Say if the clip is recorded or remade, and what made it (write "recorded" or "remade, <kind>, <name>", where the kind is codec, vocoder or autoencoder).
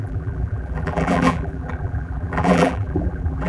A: remade, vocoder, BigVGAN v2